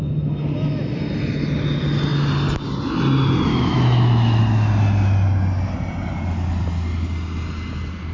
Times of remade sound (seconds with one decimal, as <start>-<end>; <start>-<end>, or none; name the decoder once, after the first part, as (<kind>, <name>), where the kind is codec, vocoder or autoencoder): 3.5-4.4 (autoencoder, DAC-VAE)